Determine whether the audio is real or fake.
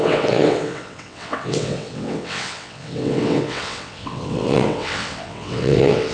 fake